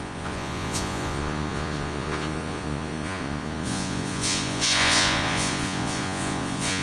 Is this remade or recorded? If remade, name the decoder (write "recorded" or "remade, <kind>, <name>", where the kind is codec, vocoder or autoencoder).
remade, vocoder, Vocos